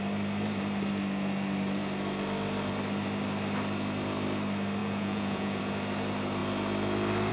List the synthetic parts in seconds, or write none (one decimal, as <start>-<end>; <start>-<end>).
4.8-5.6